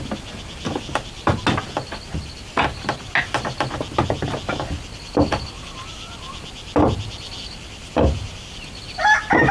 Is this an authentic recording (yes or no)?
yes